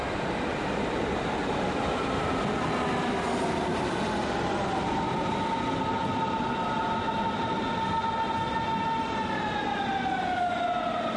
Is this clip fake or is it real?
real